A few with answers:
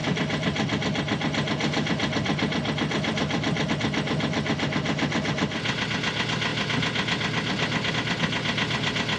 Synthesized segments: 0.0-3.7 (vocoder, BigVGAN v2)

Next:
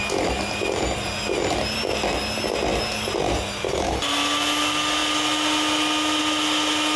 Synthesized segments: 2.7-4.0 (vocoder, BigVGAN v2)

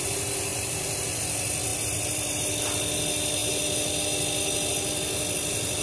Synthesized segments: 1.7-2.4 (vocoder, BigVGAN v2)

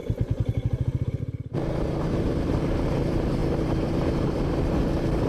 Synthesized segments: 1.2-5.3 (vocoder, BigVGAN v2)

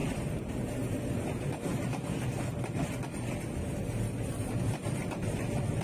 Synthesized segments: 0.0-1.1 (vocoder, BigVGAN v2)

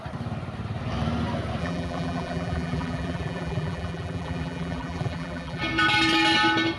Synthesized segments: 1.6-5.6 (vocoder, BigVGAN v2)

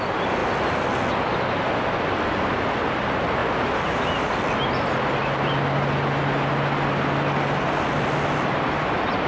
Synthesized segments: 3.4-4.3 (vocoder, BigVGAN v2)